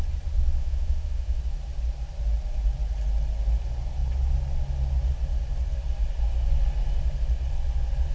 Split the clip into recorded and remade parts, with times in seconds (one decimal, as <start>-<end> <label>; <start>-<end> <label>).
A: 0.0-0.6 recorded; 0.6-1.4 remade; 1.4-8.1 recorded